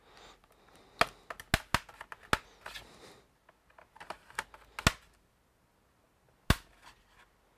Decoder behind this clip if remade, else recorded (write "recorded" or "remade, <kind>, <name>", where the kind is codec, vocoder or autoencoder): recorded